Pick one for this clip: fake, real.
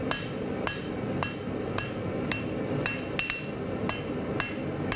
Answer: real